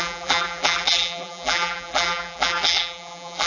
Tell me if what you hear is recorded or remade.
remade